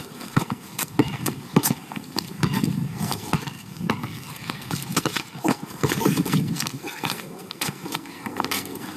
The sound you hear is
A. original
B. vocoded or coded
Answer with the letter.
B